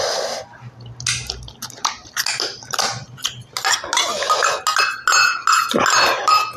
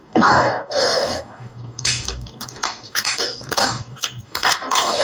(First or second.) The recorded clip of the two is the first